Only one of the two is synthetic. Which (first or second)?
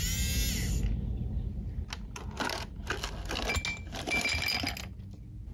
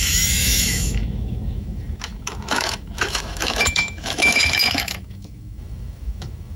second